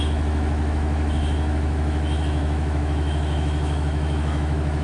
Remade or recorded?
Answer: remade